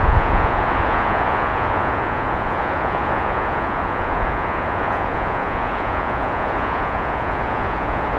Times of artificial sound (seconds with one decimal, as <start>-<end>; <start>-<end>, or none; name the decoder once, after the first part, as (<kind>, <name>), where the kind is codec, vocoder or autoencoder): 0.0-8.2 (vocoder, Vocos)